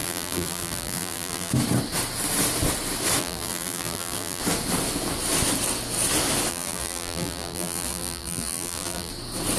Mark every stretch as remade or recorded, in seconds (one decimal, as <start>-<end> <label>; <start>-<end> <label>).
0.0-1.5 remade; 1.5-3.2 recorded; 3.2-4.4 remade; 4.4-6.5 recorded; 6.5-9.1 remade; 9.1-9.6 recorded